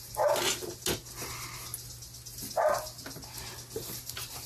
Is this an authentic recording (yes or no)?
yes